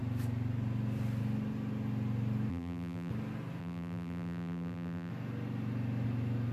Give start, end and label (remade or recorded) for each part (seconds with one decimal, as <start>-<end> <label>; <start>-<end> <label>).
0.0-2.5 recorded; 2.5-3.1 remade; 3.1-3.6 recorded; 3.6-5.1 remade; 5.1-6.5 recorded